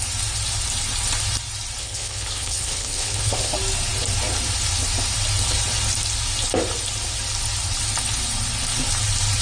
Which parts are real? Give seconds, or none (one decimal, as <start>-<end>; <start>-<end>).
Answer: 0.0-1.8; 3.5-9.4

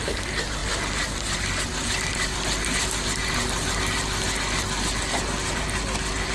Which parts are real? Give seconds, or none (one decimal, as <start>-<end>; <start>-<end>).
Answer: 0.0-6.3

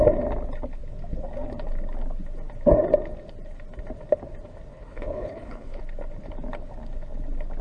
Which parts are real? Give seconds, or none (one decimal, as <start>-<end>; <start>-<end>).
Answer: 0.0-4.7; 5.8-7.6

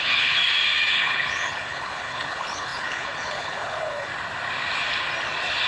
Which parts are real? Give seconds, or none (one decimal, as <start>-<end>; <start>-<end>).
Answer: 0.4-0.9; 4.1-5.7

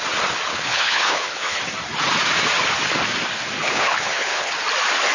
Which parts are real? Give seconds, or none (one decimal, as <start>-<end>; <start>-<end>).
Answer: 0.0-0.5; 1.6-3.6; 4.5-5.1

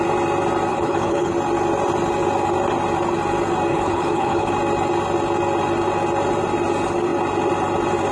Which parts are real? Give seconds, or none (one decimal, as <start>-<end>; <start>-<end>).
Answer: 0.0-0.7; 1.3-3.7; 4.5-8.1

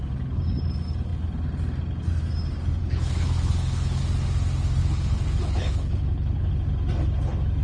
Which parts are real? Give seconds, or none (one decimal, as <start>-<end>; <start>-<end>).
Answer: 0.0-2.8; 4.0-4.8; 6.5-7.6